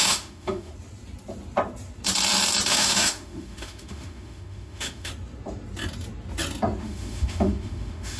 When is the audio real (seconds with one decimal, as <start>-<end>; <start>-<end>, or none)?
0.7-2.7; 5.1-6.8